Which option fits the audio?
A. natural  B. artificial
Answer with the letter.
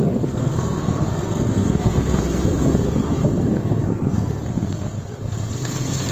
B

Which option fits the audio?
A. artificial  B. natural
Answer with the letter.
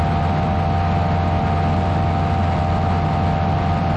B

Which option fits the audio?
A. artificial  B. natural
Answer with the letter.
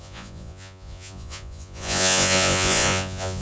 A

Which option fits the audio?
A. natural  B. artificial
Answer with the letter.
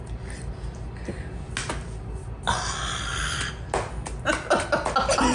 A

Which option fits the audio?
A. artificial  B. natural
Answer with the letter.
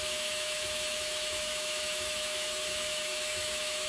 A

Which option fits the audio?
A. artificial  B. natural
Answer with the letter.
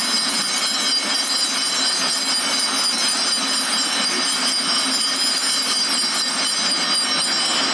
B